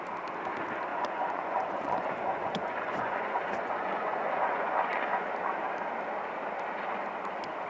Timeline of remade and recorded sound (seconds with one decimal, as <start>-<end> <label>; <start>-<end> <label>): 0.0-0.9 recorded; 0.9-5.3 remade; 5.3-7.7 recorded